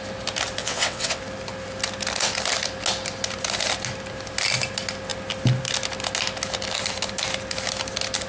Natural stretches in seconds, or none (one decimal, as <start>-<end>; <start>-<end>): 0.0-0.6; 1.2-8.3